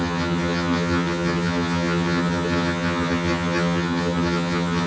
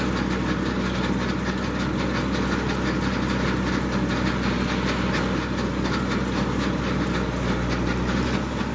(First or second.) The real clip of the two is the second